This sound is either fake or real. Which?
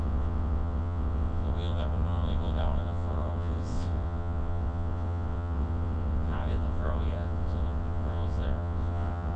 fake